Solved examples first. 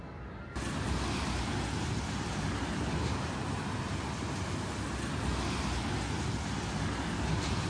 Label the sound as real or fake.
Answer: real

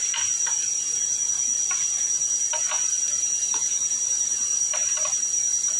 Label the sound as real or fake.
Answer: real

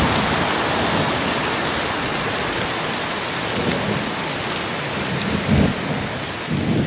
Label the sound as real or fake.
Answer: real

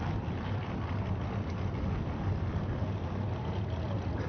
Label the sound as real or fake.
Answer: real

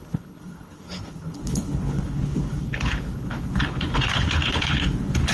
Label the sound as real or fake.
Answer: fake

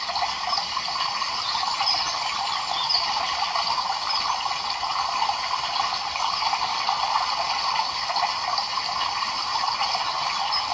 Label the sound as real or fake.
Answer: real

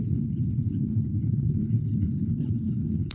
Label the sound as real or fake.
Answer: fake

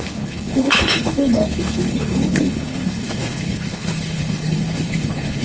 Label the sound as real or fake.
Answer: fake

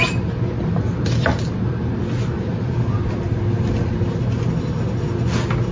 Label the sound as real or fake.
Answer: real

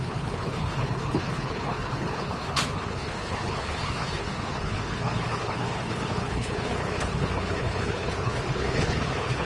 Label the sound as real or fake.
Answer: fake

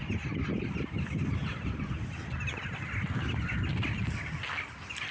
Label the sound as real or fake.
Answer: real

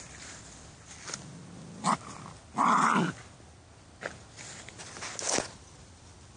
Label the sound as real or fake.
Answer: real